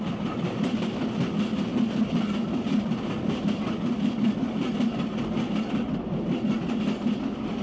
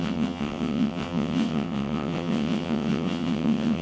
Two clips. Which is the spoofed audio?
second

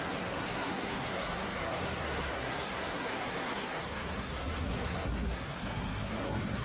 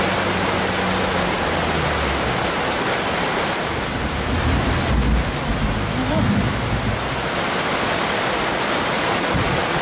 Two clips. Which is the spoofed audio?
first